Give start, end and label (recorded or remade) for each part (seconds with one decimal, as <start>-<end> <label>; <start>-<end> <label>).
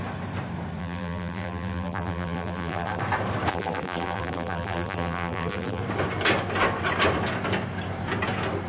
0.0-0.8 recorded; 0.8-3.0 remade; 3.0-3.5 recorded; 3.5-5.8 remade; 5.8-8.7 recorded